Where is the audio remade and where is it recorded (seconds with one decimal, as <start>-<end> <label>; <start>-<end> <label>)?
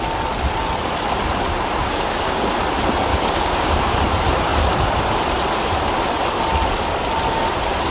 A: 0.0-1.8 recorded; 1.8-2.5 remade; 2.5-3.1 recorded; 3.1-4.0 remade; 4.0-7.9 recorded